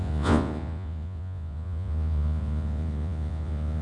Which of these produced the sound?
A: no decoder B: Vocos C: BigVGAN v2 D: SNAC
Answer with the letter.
B